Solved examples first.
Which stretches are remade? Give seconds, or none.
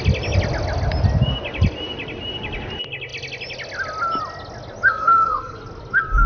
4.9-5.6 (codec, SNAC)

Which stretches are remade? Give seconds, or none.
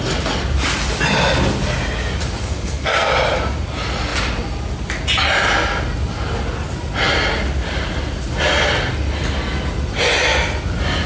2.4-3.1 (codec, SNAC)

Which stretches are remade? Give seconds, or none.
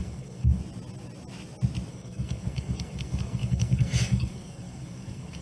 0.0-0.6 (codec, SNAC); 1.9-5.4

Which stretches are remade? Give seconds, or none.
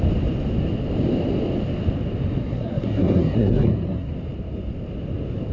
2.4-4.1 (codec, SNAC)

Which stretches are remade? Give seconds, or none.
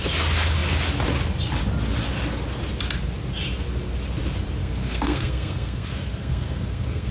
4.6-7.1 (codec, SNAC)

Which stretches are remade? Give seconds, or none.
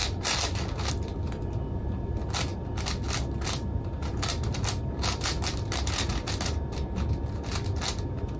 none